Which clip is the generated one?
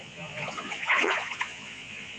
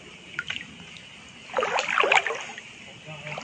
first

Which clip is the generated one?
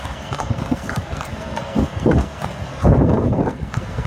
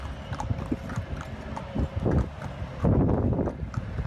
first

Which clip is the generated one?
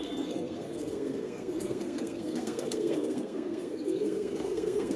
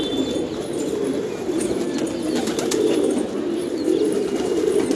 first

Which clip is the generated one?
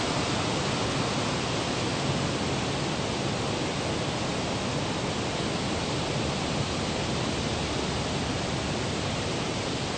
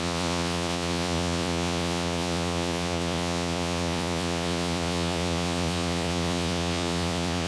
second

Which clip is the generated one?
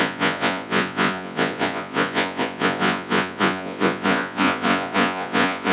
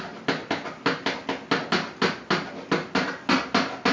first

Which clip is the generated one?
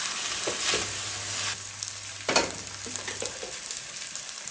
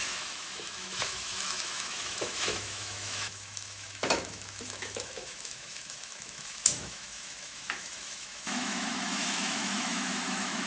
second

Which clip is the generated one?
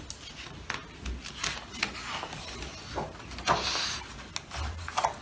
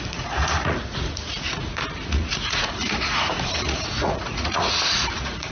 second